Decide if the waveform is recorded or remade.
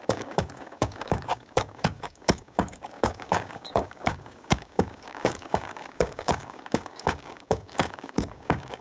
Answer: remade